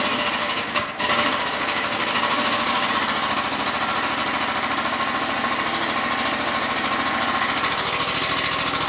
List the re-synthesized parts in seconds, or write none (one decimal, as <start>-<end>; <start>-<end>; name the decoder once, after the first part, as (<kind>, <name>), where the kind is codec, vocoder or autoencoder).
0.4-2.9 (codec, DAC)